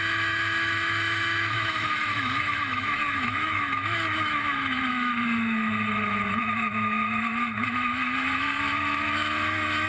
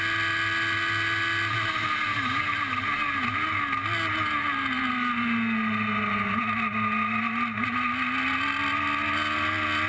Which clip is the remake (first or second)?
first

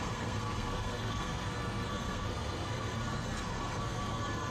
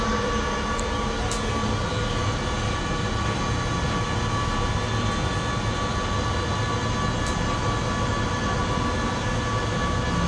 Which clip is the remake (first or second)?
first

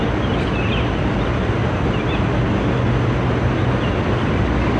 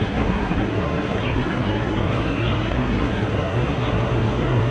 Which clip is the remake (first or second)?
second